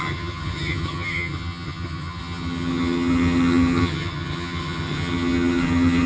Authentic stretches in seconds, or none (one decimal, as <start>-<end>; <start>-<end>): none